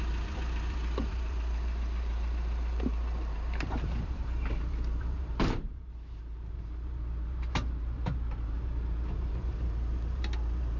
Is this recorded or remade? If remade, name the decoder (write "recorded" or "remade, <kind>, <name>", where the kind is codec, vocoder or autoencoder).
remade, vocoder, BigVGAN v2